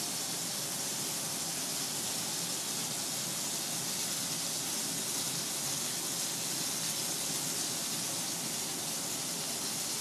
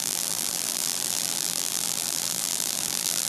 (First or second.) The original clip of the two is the first